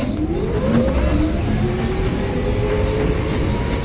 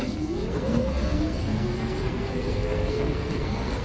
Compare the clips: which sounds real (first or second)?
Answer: first